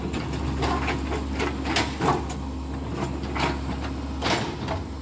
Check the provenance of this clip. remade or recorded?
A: recorded